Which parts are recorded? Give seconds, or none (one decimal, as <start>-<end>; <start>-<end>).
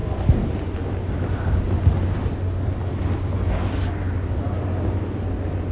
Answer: 0.0-5.7